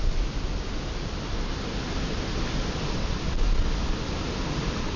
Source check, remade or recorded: recorded